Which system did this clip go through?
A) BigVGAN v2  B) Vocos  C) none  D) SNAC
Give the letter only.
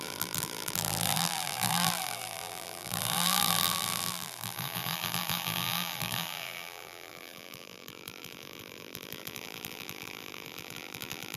A